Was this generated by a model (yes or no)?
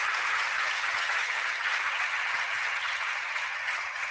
yes